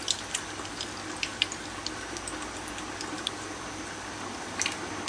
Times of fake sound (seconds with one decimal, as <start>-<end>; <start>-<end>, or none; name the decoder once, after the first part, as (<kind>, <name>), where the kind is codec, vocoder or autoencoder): none